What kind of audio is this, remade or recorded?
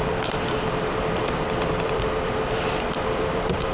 remade